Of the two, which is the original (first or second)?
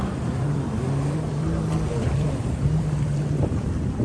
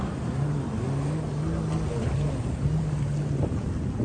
second